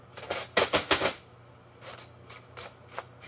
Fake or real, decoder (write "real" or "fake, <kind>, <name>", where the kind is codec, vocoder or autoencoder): real